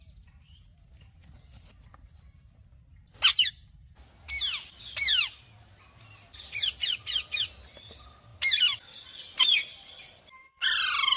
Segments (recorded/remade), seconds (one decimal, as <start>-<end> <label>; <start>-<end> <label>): 0.0-11.2 recorded